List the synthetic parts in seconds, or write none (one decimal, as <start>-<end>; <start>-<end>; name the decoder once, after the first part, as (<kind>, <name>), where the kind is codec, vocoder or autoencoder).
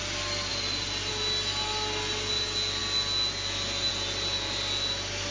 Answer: none